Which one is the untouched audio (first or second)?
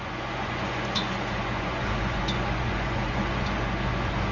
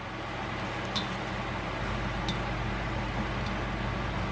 second